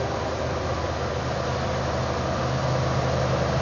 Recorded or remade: recorded